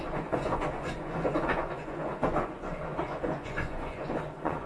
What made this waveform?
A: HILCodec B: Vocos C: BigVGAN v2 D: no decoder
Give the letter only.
B